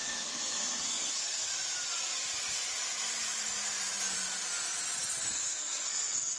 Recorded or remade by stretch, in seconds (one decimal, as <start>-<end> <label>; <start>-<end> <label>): 0.0-1.5 remade; 1.5-5.3 recorded; 5.3-6.4 remade